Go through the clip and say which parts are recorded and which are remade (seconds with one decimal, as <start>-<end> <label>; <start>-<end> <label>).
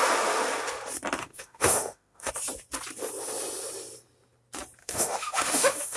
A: 0.0-1.2 recorded; 1.2-2.3 remade; 2.3-4.8 recorded; 4.8-6.0 remade